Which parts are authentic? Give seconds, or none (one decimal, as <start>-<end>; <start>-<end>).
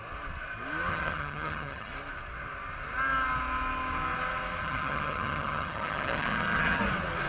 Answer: 0.0-0.9; 1.9-4.6; 6.8-7.3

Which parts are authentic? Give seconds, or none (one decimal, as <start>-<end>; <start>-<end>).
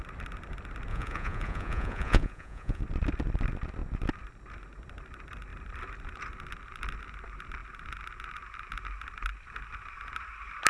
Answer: 0.0-0.9; 2.8-10.7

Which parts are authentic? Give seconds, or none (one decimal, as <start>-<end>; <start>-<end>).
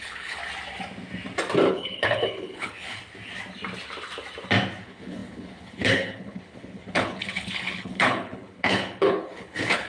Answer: 0.4-1.7; 3.0-4.8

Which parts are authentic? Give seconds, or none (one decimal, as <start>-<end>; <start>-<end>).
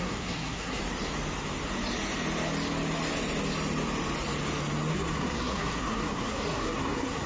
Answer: 0.8-4.9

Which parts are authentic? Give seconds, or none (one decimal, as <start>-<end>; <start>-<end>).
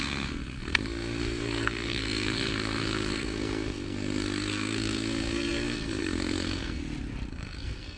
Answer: 6.8-7.3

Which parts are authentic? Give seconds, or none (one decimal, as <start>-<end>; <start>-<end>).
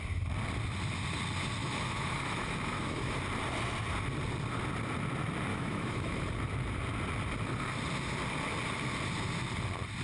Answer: 0.0-1.6; 3.2-5.5; 6.2-10.0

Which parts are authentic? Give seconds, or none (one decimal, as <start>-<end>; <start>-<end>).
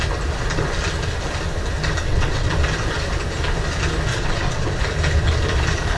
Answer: 0.0-2.0; 2.5-4.1; 4.8-6.0